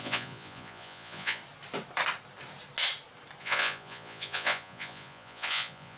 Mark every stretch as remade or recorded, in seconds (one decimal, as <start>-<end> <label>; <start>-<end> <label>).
0.0-1.4 remade; 1.4-3.4 recorded; 3.4-6.0 remade